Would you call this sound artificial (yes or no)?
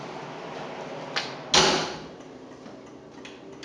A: no